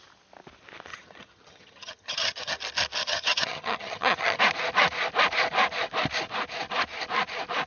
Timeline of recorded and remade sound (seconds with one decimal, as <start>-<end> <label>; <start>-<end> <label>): 0.0-0.9 recorded; 0.9-2.5 remade; 2.5-3.0 recorded; 3.0-4.4 remade; 4.4-7.7 recorded